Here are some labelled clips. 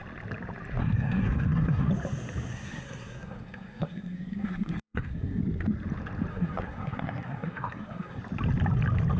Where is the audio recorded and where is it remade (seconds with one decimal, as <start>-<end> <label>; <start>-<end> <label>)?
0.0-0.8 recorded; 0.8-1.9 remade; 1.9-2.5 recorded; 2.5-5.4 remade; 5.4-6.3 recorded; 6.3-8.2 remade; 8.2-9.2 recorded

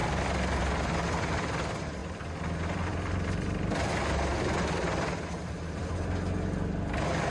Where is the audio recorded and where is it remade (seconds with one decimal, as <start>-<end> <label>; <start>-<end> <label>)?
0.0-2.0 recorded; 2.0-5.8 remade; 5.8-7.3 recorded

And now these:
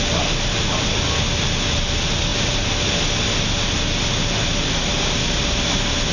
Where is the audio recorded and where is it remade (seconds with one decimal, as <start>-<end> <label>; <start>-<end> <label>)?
0.0-6.1 recorded

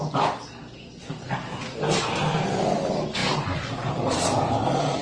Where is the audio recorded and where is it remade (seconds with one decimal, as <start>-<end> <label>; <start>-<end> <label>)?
0.0-5.0 recorded

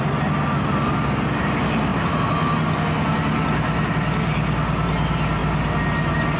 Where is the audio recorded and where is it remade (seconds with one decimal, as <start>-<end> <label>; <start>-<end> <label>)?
0.0-6.4 recorded

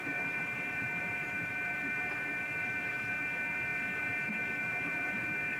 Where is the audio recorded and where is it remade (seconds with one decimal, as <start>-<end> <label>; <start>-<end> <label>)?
0.0-5.6 remade